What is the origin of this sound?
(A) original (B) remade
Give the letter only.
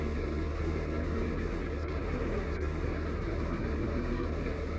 B